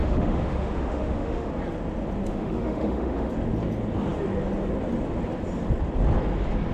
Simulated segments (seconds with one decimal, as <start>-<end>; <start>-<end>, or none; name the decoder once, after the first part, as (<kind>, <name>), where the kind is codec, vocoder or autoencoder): 0.0-1.5 (autoencoder, DAC-VAE); 2.3-3.3